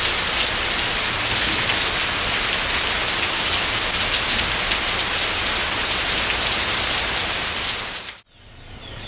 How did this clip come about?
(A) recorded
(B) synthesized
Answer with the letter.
A